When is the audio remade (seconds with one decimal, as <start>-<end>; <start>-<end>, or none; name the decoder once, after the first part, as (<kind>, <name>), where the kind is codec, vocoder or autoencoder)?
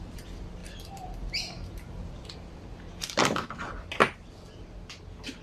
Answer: 0.6-3.6 (vocoder, BigVGAN v2)